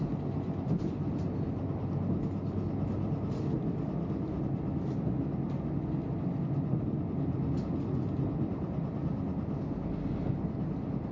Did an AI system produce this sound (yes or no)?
no